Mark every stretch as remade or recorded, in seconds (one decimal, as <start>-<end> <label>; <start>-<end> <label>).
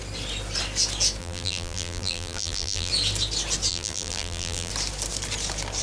0.0-1.2 recorded; 1.2-2.9 remade; 2.9-3.7 recorded; 3.7-4.7 remade; 4.7-5.8 recorded